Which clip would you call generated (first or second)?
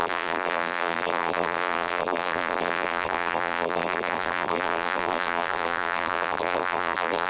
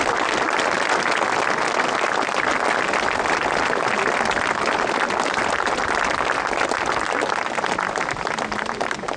first